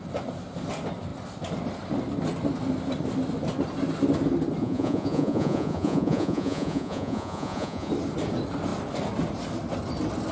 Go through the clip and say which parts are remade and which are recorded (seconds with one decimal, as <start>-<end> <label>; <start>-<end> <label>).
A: 0.0-4.6 recorded; 4.6-7.9 remade; 7.9-10.3 recorded